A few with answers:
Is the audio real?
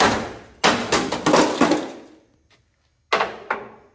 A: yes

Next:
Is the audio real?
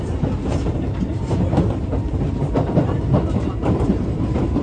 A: no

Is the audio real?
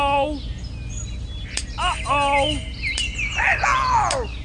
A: yes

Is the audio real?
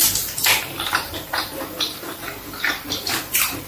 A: no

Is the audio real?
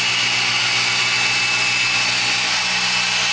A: yes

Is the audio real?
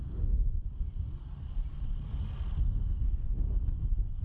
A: yes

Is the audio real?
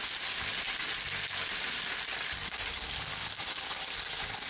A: yes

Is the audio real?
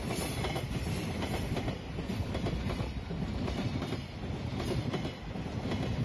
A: yes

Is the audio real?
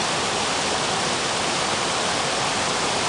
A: yes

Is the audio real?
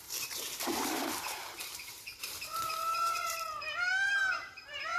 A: no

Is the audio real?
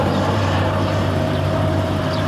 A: no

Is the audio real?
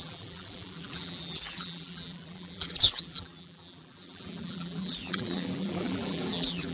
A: no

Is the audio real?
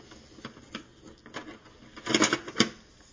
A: yes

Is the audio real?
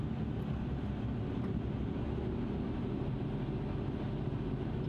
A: yes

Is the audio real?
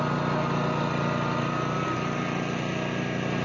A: yes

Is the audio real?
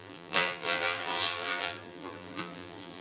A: no